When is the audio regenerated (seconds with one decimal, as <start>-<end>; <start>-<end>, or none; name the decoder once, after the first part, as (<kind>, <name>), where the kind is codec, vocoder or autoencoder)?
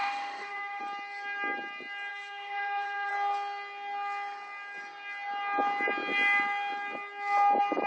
0.0-0.8 (autoencoder, DAC-VAE); 2.1-3.1